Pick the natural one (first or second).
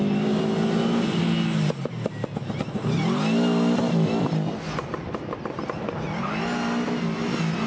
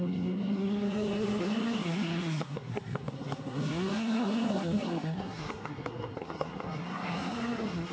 first